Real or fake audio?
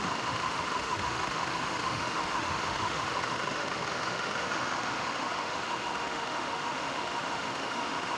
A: fake